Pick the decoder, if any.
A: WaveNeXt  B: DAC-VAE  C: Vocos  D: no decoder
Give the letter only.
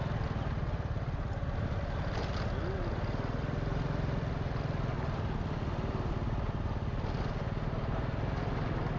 D